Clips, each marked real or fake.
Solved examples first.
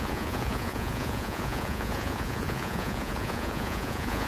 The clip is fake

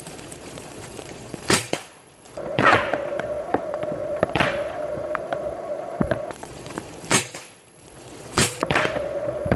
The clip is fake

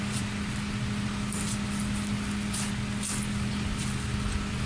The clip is real